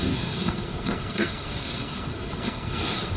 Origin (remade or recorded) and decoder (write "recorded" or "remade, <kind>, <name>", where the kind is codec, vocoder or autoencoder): remade, codec, SNAC